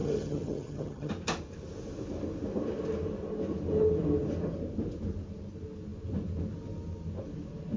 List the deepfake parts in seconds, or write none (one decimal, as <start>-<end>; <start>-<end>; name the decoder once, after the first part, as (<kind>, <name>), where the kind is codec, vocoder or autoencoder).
0.0-1.1 (vocoder, HiFi-GAN)